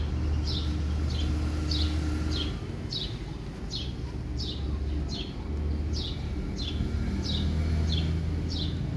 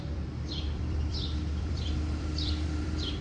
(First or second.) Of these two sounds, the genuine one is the first